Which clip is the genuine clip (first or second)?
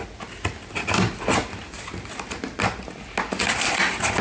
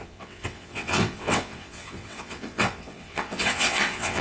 first